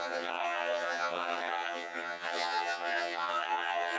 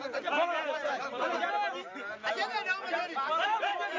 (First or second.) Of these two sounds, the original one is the second